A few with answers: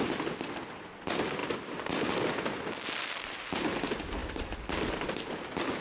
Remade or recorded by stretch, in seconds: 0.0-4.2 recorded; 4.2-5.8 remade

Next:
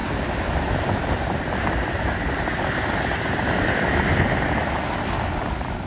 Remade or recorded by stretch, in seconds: 0.0-2.2 remade; 2.2-5.9 recorded

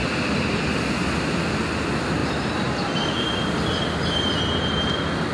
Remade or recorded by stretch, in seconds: 0.0-0.7 remade; 0.7-2.2 recorded; 2.2-4.4 remade; 4.4-5.3 recorded

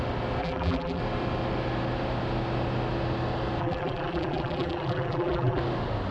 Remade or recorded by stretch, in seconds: 0.0-0.4 recorded; 0.4-1.0 remade; 1.0-3.6 recorded; 3.6-5.6 remade; 5.6-6.1 recorded

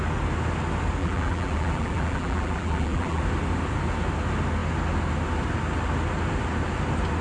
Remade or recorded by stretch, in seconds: 0.0-1.0 recorded; 1.0-3.2 remade; 3.2-7.2 recorded

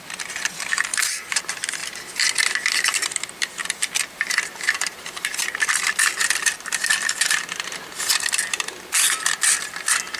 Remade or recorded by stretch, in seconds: 0.0-0.9 recorded; 0.9-1.4 remade; 1.4-5.3 recorded; 5.3-5.8 remade; 5.8-10.2 recorded

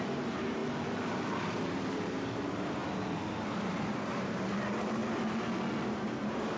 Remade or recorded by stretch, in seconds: 0.0-0.6 remade; 0.6-1.4 recorded; 1.4-2.8 remade; 2.8-3.4 recorded; 3.4-5.0 remade; 5.0-5.8 recorded; 5.8-6.6 remade